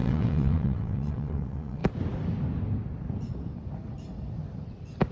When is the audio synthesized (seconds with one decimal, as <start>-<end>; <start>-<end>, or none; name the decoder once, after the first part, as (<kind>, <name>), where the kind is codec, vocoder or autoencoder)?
0.0-1.8 (vocoder, WaveNeXt)

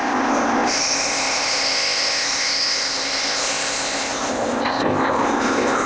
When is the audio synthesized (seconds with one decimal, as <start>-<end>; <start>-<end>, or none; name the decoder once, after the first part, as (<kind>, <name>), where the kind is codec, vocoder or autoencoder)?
0.0-5.9 (codec, ZipCodec)